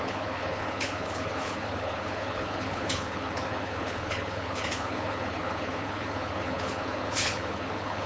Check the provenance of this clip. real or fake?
fake